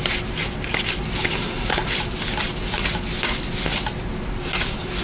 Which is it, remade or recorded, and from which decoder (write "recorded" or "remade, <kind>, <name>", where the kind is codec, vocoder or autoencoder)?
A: recorded